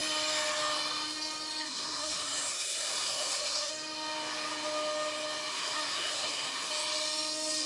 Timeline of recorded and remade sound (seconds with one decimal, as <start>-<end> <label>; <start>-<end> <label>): 0.0-1.6 recorded; 1.6-3.7 remade; 3.7-5.5 recorded; 5.5-6.7 remade; 6.7-7.7 recorded